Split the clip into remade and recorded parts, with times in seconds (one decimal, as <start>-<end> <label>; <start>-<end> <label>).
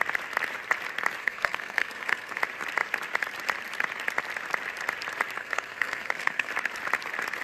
0.0-1.2 recorded; 1.2-2.4 remade; 2.4-5.4 recorded; 5.4-6.5 remade; 6.5-7.4 recorded